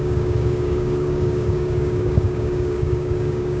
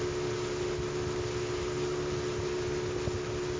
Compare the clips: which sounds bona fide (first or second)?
second